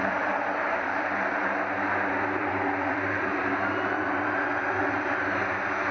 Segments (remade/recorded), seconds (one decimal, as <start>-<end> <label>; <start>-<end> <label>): 0.0-3.5 remade; 3.5-5.9 recorded